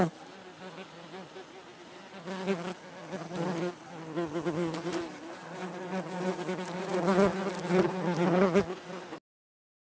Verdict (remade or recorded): recorded